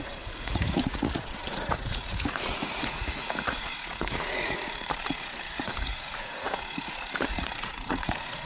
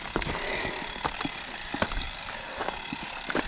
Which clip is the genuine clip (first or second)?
second